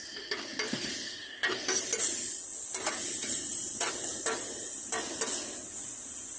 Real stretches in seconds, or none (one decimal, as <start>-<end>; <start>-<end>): 0.0-6.4